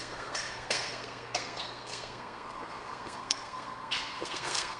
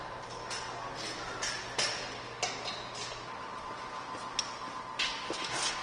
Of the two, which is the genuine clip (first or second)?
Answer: second